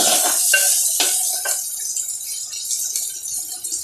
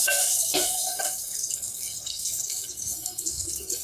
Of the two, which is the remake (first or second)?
second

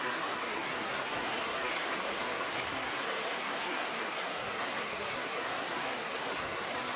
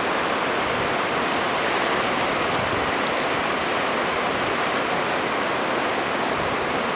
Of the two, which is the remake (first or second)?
first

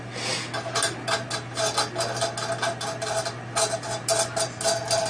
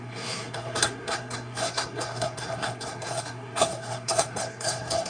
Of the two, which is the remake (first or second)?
second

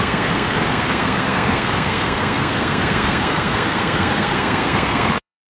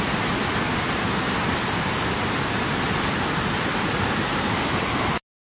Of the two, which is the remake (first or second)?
first